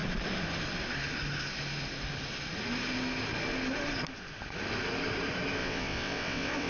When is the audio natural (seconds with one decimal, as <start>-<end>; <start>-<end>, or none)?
0.0-5.6

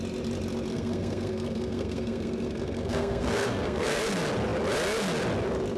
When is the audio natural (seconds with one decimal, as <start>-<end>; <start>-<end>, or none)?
0.0-0.7; 4.0-5.8